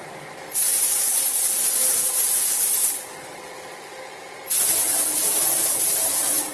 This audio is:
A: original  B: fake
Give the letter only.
A